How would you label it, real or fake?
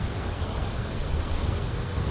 fake